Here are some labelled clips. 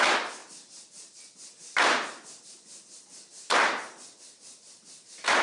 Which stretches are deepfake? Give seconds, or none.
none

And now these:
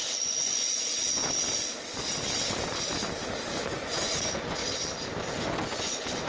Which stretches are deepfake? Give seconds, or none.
0.0-1.2 (vocoder, Vocos); 3.5-4.6; 5.2-6.3

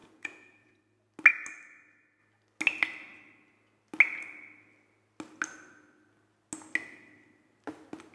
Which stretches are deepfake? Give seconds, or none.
0.0-0.8 (vocoder, Vocos)

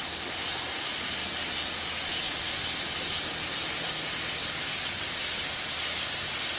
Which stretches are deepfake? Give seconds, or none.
none

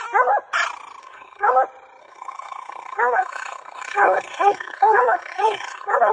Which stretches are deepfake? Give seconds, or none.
1.0-1.5 (codec, SNAC); 2.0-6.1

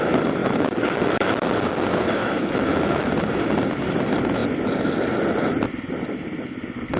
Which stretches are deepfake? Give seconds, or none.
0.4-1.5 (autoencoder, DAC-VAE); 2.2-3.1

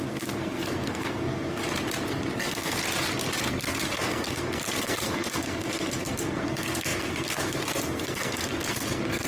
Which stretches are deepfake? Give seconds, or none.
0.0-1.6 (codec, SNAC); 2.1-2.8; 3.4-9.3